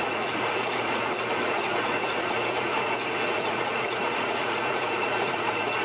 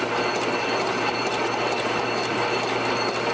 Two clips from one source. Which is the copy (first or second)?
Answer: first